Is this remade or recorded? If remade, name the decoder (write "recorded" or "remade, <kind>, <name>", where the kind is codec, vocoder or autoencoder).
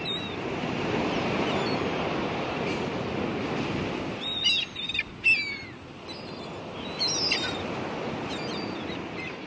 recorded